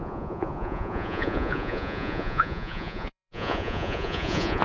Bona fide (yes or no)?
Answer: no